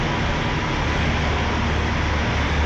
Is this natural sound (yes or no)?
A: yes